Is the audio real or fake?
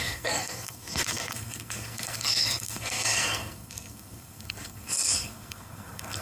fake